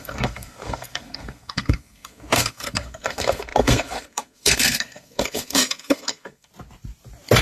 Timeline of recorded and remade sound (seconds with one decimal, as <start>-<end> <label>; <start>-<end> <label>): 0.0-6.5 remade; 6.5-7.4 recorded